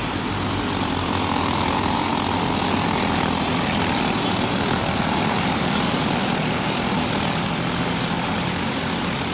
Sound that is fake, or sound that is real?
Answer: real